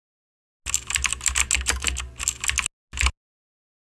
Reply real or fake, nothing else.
real